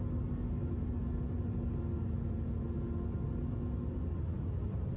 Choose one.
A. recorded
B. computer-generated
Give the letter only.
A